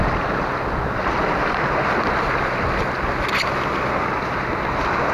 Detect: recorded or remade recorded